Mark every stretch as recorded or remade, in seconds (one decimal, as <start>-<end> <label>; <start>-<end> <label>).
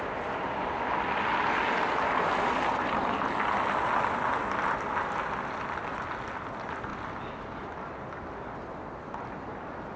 0.0-10.0 recorded